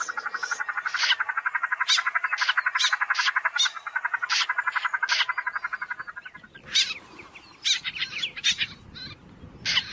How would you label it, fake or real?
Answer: real